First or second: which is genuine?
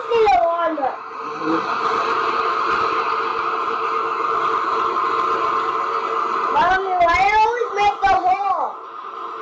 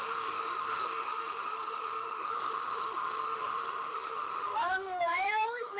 first